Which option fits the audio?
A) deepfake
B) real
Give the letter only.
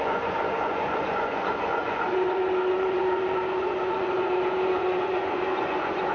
A